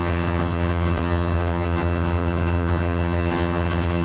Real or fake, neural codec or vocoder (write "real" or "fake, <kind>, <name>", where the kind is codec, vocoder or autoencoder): fake, vocoder, HiFi-GAN